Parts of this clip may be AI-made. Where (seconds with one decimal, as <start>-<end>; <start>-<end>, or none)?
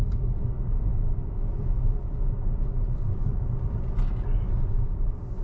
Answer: none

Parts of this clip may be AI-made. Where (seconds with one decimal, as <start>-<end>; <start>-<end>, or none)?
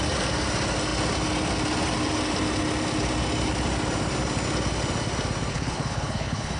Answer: 5.5-6.6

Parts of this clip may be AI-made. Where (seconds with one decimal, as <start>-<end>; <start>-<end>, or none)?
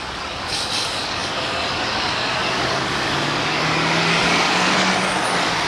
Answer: 0.0-5.7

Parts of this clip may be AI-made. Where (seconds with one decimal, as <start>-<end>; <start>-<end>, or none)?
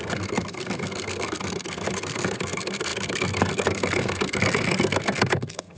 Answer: 0.0-5.8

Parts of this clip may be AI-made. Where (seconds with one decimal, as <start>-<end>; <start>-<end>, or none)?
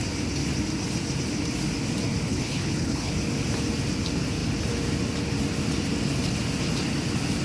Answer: 2.3-3.1